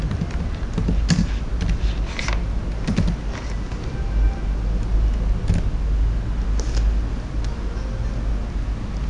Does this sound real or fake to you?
real